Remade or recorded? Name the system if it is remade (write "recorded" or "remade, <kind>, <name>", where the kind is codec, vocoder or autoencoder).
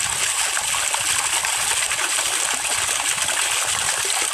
recorded